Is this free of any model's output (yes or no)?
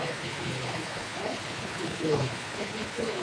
no